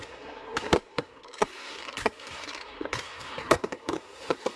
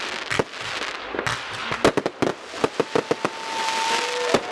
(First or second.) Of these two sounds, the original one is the second